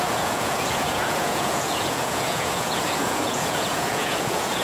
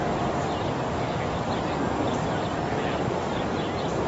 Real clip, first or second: second